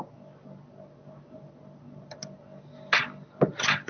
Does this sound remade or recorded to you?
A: recorded